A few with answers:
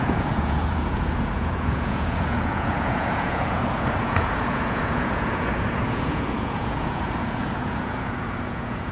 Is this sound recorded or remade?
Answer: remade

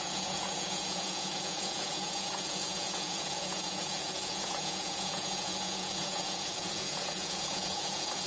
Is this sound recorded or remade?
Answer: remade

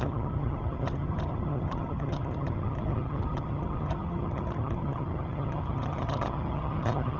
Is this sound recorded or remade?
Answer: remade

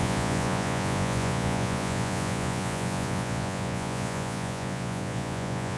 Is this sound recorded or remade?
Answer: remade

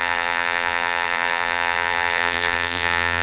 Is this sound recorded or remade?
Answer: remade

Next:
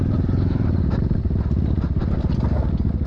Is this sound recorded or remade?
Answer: recorded